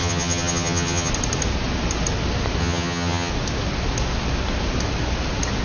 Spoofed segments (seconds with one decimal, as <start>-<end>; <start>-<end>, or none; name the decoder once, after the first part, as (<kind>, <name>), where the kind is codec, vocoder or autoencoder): 0.0-1.1 (vocoder, HiFi-GAN); 2.6-3.3